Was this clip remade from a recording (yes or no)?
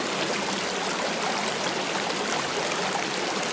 no